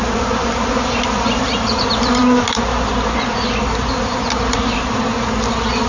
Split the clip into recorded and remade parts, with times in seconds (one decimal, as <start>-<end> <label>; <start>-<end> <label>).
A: 0.0-2.9 remade; 2.9-3.6 recorded; 3.6-5.9 remade